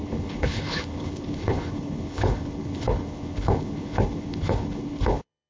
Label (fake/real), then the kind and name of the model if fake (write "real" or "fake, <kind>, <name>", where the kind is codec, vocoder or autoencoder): fake, codec, HILCodec